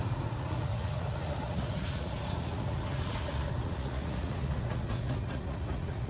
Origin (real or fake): fake